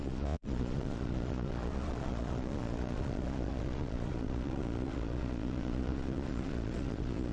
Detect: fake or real fake